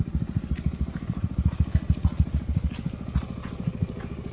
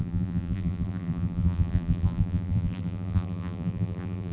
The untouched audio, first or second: first